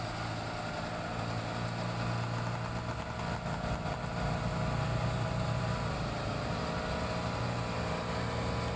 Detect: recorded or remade recorded